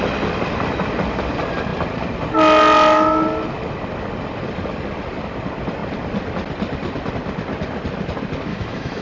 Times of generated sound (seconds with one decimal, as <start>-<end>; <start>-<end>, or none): 8.5-9.0